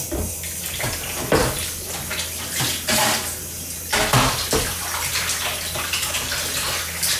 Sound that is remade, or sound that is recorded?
recorded